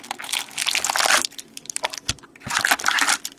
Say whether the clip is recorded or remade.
recorded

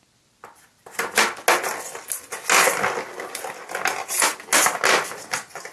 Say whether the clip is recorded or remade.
recorded